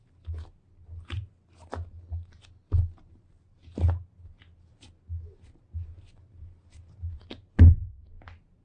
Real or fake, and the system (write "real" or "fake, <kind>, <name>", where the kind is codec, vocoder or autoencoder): real